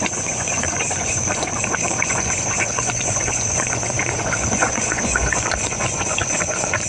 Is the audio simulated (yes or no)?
yes